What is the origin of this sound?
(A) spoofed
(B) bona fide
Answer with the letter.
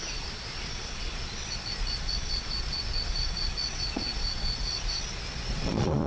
A